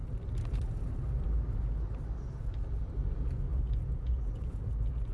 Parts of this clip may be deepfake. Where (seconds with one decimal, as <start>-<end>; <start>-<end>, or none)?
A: 3.5-4.6